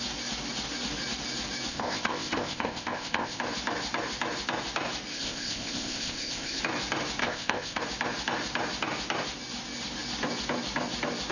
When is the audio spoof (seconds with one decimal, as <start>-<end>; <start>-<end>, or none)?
1.7-3.4; 5.1-6.6; 7.2-7.8